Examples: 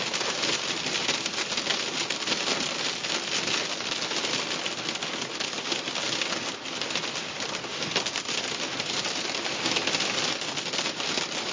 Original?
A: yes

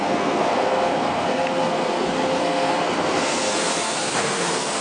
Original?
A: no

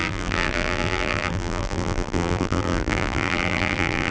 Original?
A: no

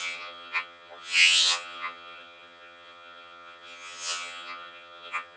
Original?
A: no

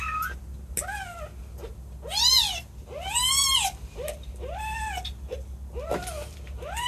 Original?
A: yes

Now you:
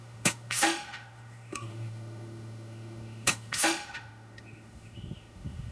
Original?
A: no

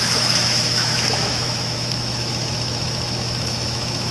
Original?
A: no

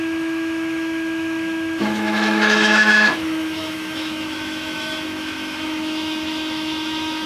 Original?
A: no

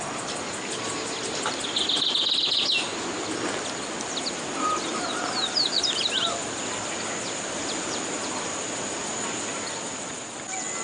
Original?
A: yes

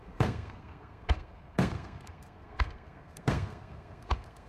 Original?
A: no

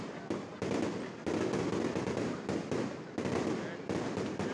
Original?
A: yes